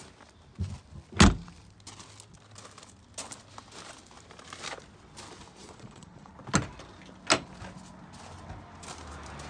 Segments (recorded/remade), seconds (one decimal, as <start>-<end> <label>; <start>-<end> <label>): 0.0-5.6 recorded; 5.6-6.3 remade; 6.3-9.5 recorded